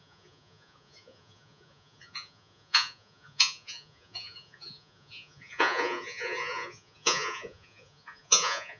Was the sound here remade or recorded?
remade